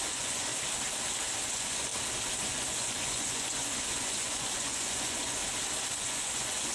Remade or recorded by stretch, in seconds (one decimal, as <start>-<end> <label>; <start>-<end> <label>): 0.0-0.5 remade; 0.5-1.5 recorded; 1.5-1.9 remade; 1.9-2.4 recorded; 2.4-5.4 remade; 5.4-6.0 recorded; 6.0-6.7 remade